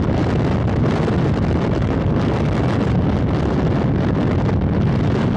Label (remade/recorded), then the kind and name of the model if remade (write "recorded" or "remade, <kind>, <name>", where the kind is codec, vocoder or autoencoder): recorded